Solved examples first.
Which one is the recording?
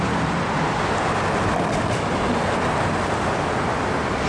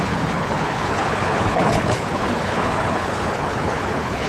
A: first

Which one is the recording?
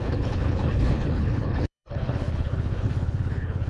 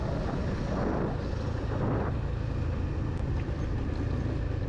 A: second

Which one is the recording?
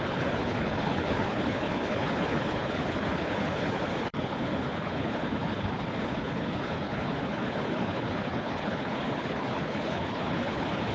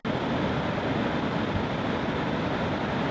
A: second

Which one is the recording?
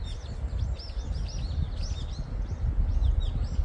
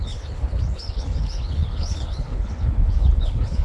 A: first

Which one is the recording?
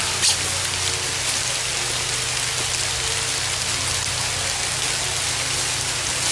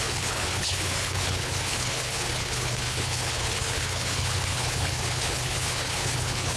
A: first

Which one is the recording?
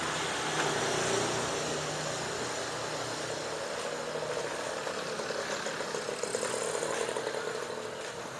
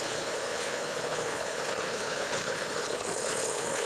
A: first